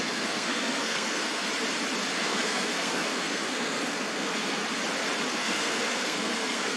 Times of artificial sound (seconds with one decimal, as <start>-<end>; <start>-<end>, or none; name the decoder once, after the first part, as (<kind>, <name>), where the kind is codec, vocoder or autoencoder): 0.0-1.5 (codec, SNAC); 2.1-4.6; 5.3-6.8